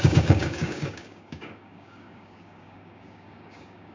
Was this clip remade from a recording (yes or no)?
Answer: yes